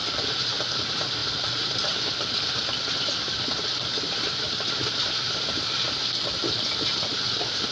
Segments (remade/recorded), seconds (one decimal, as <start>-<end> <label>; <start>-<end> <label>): 0.0-0.7 recorded; 0.7-6.4 remade; 6.4-7.1 recorded; 7.1-7.7 remade